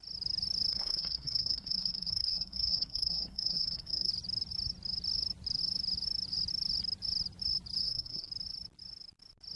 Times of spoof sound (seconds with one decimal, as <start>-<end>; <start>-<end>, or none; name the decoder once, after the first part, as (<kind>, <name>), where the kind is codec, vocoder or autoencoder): 0.7-4.1 (codec, SNAC); 7.8-8.3